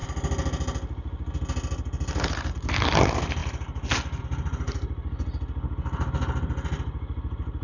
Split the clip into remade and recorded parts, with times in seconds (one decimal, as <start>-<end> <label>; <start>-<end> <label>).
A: 0.0-7.6 recorded